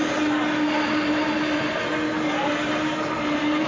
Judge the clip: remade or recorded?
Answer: recorded